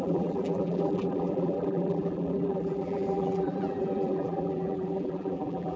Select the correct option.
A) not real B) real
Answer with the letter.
A